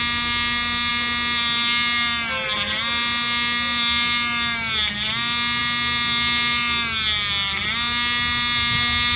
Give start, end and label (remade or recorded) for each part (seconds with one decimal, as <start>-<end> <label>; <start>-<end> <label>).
0.0-9.2 recorded